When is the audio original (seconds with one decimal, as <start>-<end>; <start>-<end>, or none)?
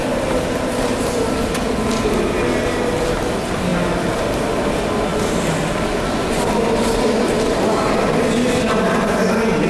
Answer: 0.0-9.7